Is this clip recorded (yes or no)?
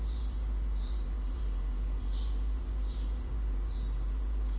no